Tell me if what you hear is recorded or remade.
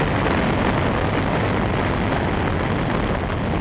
recorded